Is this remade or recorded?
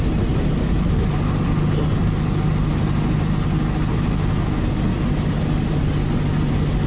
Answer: recorded